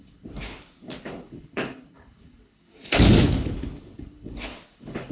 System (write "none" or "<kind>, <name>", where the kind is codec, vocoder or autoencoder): codec, HILCodec